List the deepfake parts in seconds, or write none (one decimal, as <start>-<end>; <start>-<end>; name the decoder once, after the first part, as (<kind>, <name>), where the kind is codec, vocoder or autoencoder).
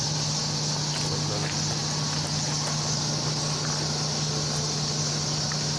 none